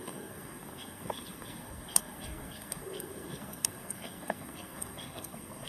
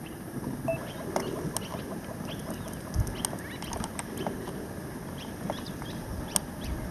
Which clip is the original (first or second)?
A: second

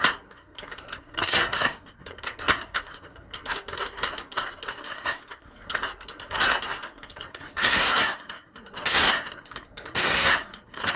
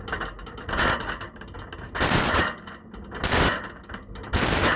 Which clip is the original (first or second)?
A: second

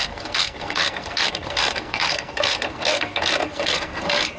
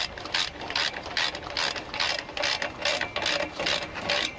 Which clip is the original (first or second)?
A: second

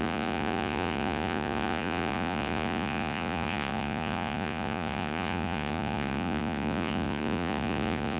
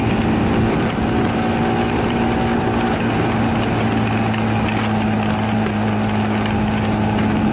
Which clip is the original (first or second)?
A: second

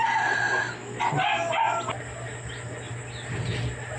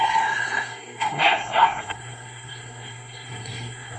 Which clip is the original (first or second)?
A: first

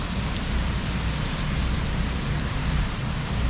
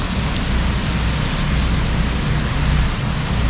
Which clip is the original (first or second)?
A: second